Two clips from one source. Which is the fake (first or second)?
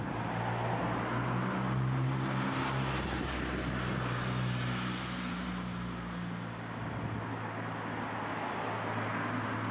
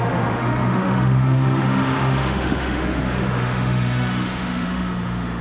second